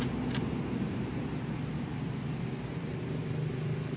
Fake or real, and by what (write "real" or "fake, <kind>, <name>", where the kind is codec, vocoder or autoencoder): real